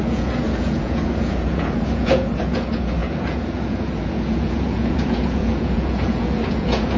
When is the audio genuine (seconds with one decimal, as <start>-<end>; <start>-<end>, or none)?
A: none

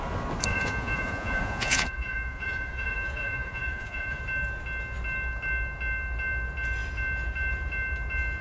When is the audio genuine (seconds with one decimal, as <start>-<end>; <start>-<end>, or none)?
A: 0.0-0.5; 4.2-8.4